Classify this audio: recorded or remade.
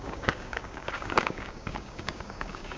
remade